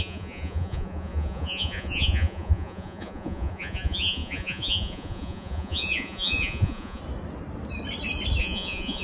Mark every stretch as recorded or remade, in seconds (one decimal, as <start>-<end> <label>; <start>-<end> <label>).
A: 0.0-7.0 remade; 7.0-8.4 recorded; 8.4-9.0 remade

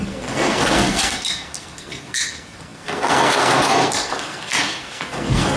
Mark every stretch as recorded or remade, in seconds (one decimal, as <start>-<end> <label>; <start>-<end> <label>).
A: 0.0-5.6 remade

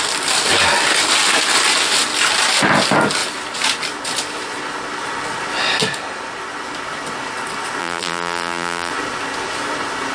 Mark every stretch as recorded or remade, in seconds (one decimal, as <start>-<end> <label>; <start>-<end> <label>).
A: 0.0-7.8 recorded; 7.8-8.9 remade; 8.9-10.1 recorded